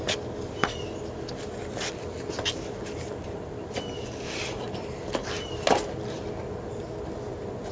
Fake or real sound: real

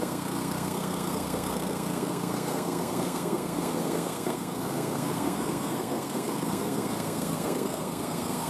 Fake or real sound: fake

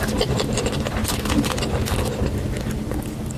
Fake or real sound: real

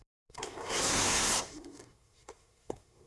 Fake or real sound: fake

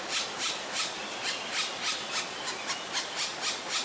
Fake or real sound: real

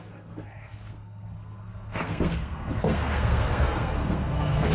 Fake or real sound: fake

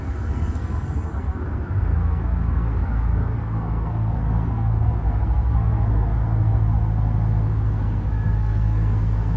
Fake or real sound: fake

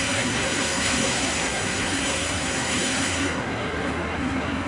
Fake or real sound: fake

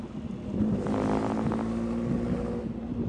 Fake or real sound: real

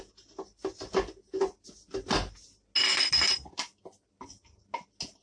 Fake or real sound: real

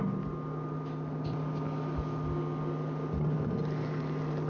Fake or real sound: real